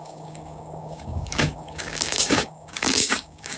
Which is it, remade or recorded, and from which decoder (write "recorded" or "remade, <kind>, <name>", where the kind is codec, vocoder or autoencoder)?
remade, codec, DAC